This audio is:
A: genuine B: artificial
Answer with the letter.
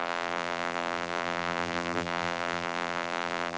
B